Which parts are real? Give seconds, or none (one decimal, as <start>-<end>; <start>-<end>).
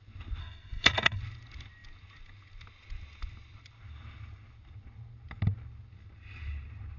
0.0-0.4; 1.2-7.0